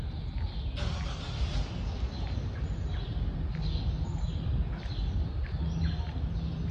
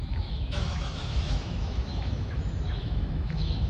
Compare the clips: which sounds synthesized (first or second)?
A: second